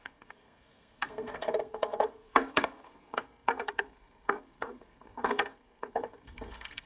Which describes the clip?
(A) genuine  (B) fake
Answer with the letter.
B